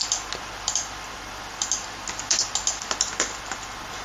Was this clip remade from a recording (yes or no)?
no